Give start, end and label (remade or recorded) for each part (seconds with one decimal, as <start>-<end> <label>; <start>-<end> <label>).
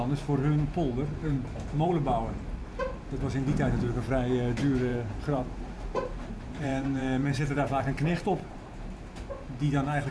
0.0-1.2 recorded; 1.2-1.9 remade; 1.9-4.9 recorded; 4.9-9.3 remade; 9.3-10.1 recorded